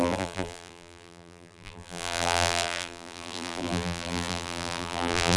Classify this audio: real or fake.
fake